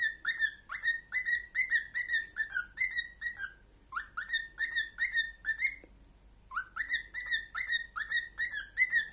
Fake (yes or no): no